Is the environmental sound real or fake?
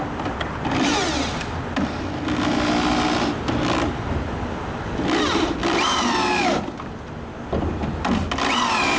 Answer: real